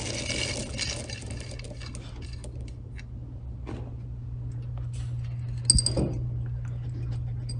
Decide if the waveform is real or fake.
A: real